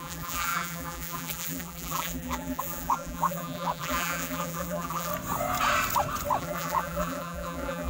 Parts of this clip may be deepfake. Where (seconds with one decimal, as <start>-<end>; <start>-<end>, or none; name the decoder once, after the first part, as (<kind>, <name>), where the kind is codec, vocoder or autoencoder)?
0.0-5.1 (vocoder, BigVGAN v2); 6.4-7.9